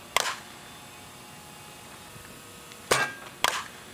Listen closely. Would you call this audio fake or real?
real